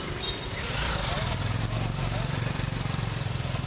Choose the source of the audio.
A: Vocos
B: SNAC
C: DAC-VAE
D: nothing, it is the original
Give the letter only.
D